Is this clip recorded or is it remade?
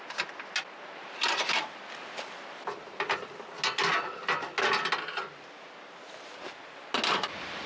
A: recorded